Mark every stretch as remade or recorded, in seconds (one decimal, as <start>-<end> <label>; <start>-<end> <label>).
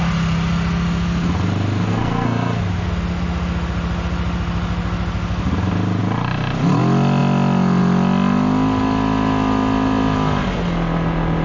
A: 0.0-1.9 recorded; 1.9-2.6 remade; 2.6-11.4 recorded